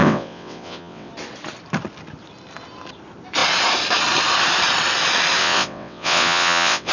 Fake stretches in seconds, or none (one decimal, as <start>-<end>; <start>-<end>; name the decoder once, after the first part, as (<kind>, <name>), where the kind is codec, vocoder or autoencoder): 0.0-1.1 (vocoder, WaveNeXt); 5.4-6.9